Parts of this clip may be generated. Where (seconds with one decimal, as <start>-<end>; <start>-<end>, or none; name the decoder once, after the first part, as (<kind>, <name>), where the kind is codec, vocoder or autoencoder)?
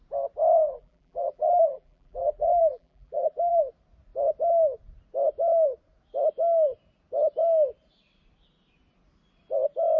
0.5-3.6 (vocoder, BigVGAN v2)